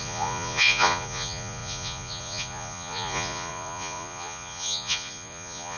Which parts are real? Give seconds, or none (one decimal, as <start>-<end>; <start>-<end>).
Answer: none